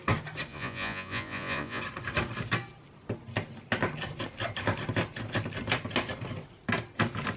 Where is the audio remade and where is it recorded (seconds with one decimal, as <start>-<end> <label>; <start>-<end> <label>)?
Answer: 0.0-0.5 recorded; 0.5-1.8 remade; 1.8-7.4 recorded